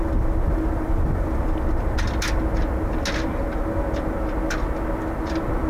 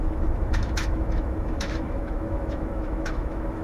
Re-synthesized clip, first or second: second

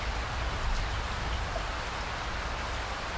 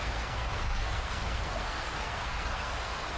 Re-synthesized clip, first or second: second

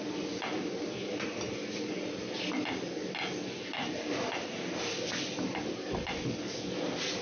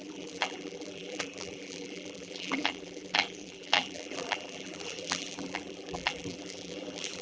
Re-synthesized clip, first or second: second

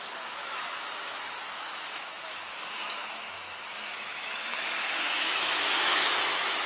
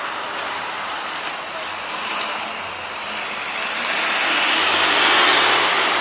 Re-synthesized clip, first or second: first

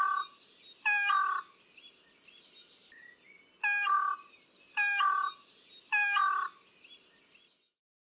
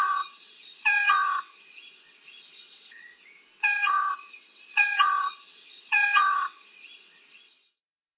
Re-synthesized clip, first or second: second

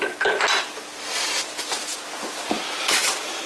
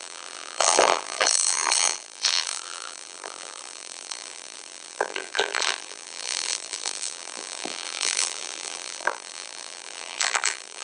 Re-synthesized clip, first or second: second